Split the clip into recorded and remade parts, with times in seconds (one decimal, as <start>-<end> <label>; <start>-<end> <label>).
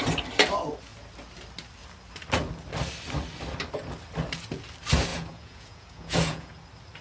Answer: 0.0-5.1 recorded; 5.1-6.5 remade; 6.5-7.0 recorded